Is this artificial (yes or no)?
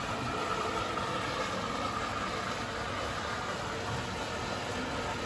no